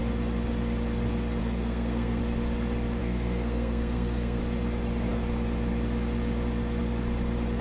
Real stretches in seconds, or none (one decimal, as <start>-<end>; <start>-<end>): 0.0-1.4; 2.2-3.0; 4.4-7.6